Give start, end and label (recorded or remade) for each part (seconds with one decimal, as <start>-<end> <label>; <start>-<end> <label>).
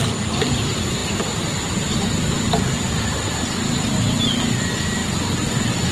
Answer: 0.0-1.0 remade; 1.0-4.5 recorded; 4.5-5.0 remade; 5.0-5.9 recorded